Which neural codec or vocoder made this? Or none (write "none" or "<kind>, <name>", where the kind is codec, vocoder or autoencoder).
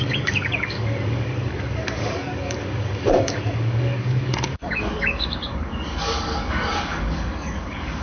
codec, DAC